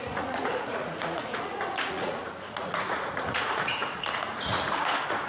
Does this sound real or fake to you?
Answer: fake